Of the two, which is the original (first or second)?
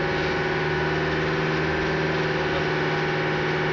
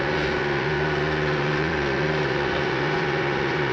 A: first